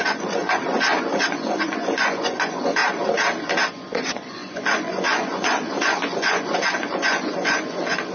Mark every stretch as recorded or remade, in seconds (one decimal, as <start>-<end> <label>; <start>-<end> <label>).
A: 0.0-2.8 remade; 2.8-3.7 recorded; 3.7-8.1 remade